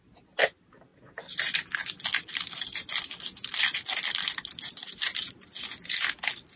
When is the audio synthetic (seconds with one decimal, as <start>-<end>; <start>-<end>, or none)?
none